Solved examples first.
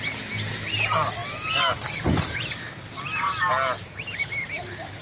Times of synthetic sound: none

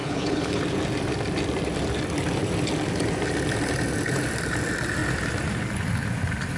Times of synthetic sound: 0.0-0.6 (codec, HILCodec)